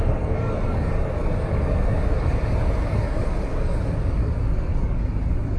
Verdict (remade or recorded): remade